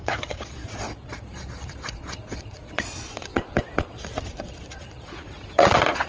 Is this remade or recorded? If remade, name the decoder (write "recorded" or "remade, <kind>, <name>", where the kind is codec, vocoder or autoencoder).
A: remade, vocoder, Vocos